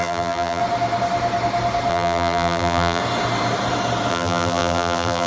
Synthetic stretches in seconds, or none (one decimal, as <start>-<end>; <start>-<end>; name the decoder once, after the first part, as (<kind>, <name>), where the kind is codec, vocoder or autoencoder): 0.0-0.6 (vocoder, BigVGAN v2); 1.9-3.0; 4.1-5.3